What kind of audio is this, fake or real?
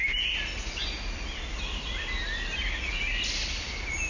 real